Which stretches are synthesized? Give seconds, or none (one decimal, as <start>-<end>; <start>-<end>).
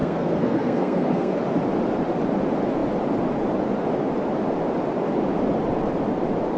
0.0-1.4